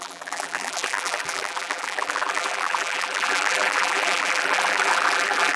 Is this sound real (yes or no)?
no